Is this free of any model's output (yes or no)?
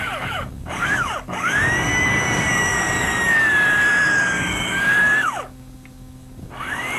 no